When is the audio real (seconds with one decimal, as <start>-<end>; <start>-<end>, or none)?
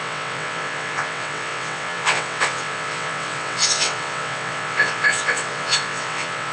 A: none